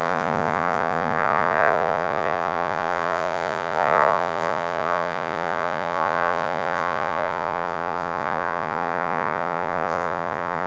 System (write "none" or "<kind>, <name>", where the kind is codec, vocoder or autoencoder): vocoder, Vocos